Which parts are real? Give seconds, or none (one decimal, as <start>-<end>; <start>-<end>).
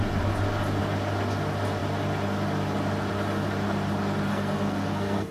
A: 0.0-4.3